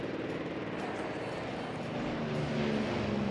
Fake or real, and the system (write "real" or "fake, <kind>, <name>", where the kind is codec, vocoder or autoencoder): real